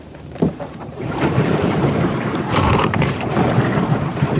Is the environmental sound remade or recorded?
remade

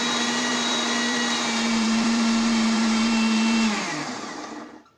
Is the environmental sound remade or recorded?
remade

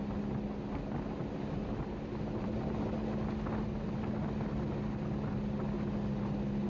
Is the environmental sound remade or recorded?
recorded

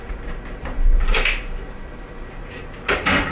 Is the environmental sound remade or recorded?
remade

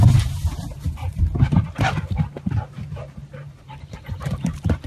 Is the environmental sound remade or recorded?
remade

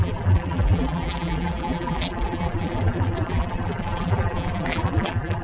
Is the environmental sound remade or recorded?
remade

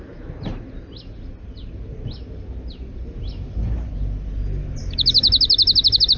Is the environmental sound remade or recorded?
recorded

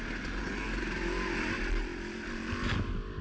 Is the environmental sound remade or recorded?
recorded